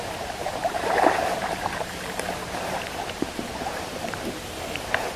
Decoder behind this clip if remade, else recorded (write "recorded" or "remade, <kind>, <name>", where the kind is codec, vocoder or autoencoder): remade, vocoder, BigVGAN v2